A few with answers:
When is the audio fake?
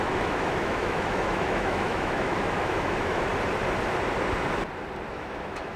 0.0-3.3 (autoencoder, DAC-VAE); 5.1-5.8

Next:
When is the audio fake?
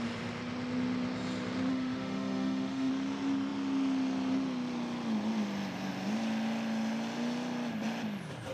1.7-2.9 (autoencoder, DAC-VAE)